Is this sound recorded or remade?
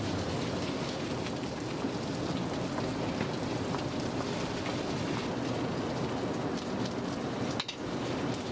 recorded